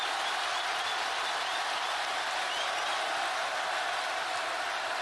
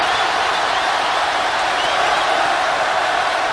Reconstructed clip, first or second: second